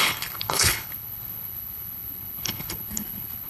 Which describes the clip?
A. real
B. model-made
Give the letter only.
B